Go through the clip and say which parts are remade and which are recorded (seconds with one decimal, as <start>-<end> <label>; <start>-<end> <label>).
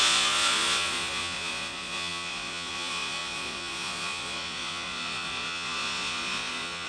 0.0-6.9 remade